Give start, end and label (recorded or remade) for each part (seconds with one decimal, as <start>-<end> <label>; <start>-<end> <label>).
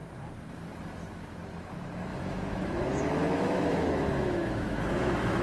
0.0-2.1 recorded; 2.1-5.4 remade